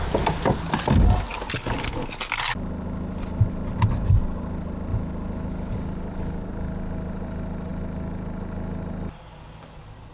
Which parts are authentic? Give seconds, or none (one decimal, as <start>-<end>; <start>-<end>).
0.0-10.1